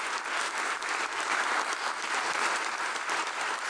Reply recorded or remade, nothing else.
recorded